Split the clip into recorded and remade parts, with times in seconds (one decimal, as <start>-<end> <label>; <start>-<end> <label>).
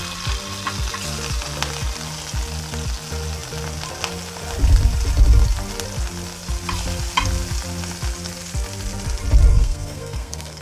0.0-9.5 recorded; 9.5-10.6 remade